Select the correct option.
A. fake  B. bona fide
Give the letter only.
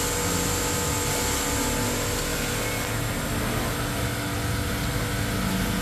B